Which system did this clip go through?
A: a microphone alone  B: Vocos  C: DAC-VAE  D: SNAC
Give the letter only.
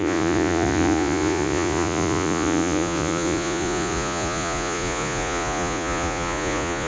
B